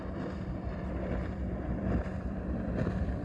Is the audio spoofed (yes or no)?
yes